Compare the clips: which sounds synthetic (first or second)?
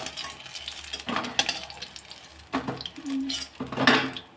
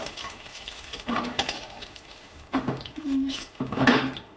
second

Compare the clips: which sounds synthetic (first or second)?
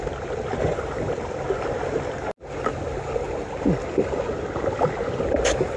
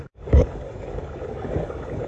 second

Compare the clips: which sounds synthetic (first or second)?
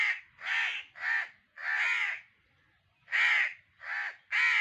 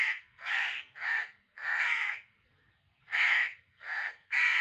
second